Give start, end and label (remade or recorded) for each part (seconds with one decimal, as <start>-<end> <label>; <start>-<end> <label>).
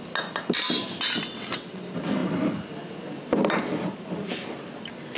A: 0.0-1.3 recorded; 1.3-1.8 remade; 1.8-5.2 recorded